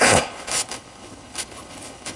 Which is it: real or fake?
fake